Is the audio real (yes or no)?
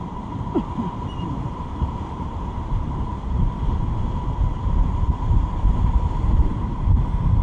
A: no